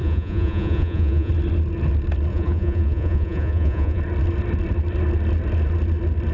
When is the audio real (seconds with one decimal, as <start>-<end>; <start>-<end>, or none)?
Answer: 1.3-2.3; 4.0-6.3